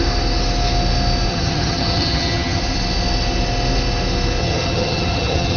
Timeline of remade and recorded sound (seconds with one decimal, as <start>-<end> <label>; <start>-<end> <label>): 0.0-1.3 recorded; 1.3-2.6 remade; 2.6-4.4 recorded; 4.4-5.6 remade